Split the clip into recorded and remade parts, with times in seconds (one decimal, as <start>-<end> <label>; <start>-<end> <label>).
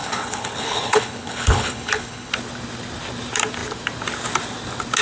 0.0-2.3 remade; 2.3-5.0 recorded